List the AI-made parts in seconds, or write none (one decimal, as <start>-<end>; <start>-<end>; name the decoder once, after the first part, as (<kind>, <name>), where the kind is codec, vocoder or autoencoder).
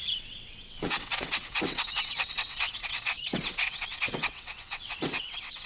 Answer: 0.0-5.7 (vocoder, WaveNeXt)